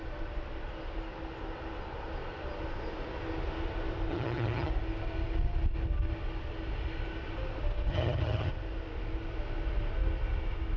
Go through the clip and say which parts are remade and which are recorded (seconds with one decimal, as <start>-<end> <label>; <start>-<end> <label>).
0.0-4.1 recorded; 4.1-4.7 remade; 4.7-7.9 recorded; 7.9-8.5 remade; 8.5-10.8 recorded